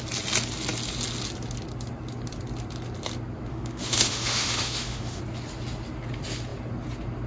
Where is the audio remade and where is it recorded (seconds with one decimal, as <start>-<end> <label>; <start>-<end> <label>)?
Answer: 0.0-3.5 recorded; 3.5-5.2 remade; 5.2-7.3 recorded